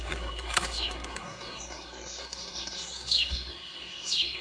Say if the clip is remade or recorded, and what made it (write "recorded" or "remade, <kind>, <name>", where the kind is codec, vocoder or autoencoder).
remade, codec, SNAC